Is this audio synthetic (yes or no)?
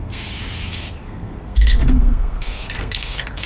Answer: yes